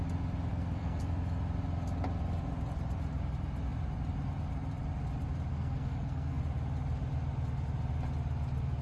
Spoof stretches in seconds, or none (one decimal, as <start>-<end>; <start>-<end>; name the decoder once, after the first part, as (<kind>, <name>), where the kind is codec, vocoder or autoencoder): 0.5-1.0 (codec, SNAC); 5.5-6.4